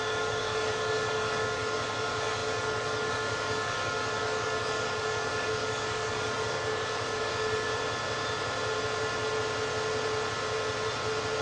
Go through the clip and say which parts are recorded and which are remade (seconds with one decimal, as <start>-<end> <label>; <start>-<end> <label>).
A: 0.0-7.7 remade; 7.7-11.4 recorded